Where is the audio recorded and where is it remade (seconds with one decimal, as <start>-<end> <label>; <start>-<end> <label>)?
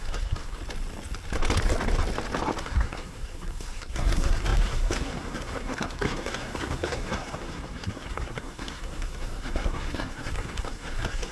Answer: 0.0-0.6 remade; 0.6-2.6 recorded; 2.6-11.3 remade